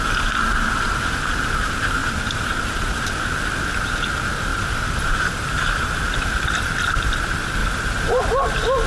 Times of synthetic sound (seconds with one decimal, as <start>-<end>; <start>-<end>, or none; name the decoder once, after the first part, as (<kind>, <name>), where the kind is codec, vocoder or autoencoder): 2.0-3.0 (vocoder, BigVGAN v2); 4.5-5.9; 7.6-8.2